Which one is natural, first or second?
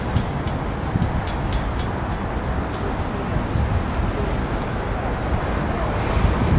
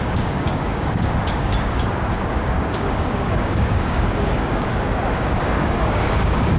first